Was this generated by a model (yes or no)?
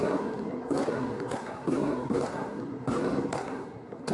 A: yes